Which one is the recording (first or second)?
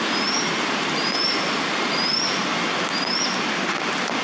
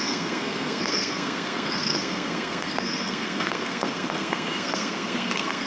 first